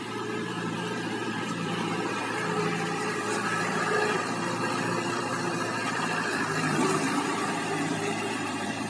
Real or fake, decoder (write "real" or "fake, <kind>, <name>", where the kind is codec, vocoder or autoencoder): fake, vocoder, BigVGAN v2